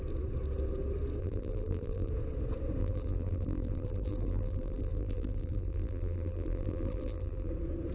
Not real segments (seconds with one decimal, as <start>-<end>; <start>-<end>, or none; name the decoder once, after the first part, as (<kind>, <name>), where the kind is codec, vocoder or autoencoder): 1.2-2.1 (vocoder, BigVGAN v2); 2.8-7.5